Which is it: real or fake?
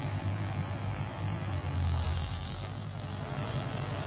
fake